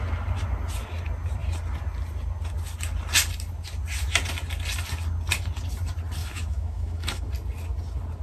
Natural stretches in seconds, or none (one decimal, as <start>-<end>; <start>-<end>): 0.0-6.2; 7.3-8.2